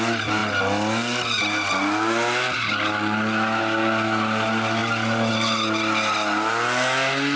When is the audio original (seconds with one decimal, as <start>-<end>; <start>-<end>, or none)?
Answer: 0.0-7.4